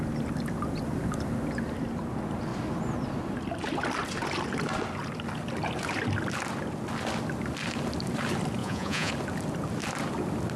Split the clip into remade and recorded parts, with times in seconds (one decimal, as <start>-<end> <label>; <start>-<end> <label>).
0.0-8.6 recorded; 8.6-9.1 remade; 9.1-10.6 recorded